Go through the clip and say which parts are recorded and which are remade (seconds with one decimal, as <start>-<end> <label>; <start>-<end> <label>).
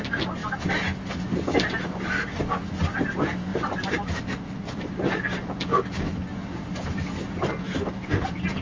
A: 0.0-3.5 recorded; 3.5-4.2 remade; 4.2-8.6 recorded